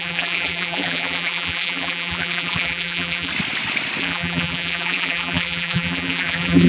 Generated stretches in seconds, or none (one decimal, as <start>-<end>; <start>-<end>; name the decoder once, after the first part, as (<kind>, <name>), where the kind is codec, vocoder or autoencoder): 0.0-3.3 (vocoder, BigVGAN v2); 4.0-6.7